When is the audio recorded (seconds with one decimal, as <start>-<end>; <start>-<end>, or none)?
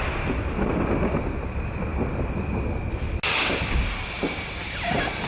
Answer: 0.0-5.3